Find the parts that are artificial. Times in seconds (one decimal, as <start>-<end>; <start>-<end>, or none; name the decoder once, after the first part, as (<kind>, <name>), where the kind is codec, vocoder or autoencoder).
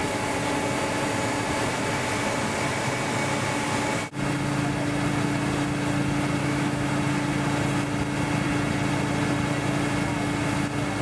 6.4-6.9 (autoencoder, DAC-VAE)